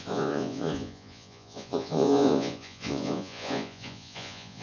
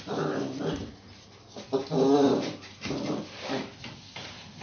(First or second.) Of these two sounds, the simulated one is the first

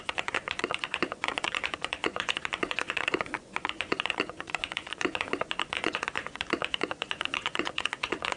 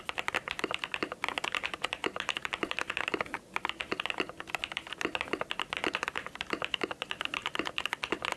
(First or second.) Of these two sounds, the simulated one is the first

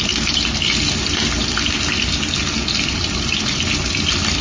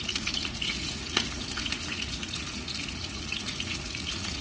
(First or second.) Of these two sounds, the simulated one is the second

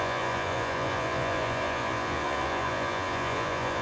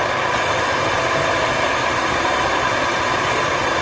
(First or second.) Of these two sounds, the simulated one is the first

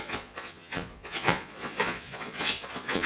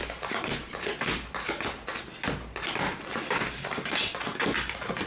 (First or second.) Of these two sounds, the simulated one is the first